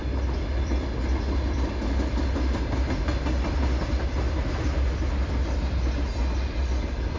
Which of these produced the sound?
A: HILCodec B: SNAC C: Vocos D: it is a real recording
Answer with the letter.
D